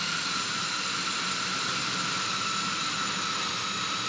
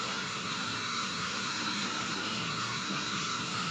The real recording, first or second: first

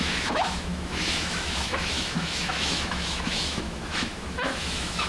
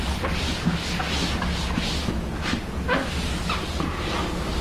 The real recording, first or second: second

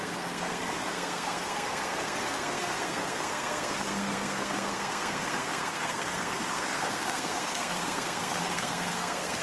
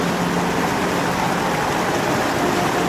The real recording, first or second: second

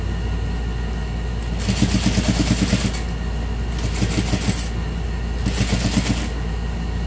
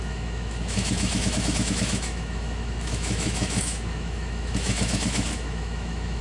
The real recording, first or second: first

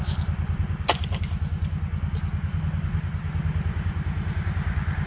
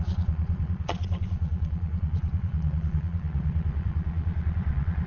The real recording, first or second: first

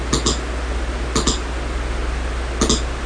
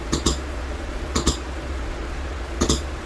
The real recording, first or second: first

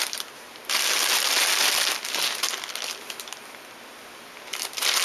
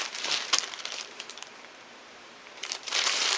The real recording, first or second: first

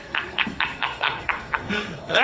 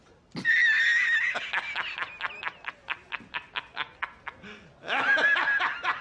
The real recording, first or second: second